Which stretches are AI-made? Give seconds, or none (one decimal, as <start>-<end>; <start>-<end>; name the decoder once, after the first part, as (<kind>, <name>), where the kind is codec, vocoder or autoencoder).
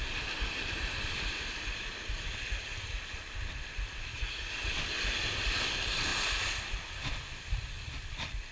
4.1-4.7 (vocoder, Vocos)